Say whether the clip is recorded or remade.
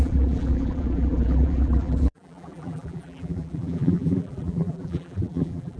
remade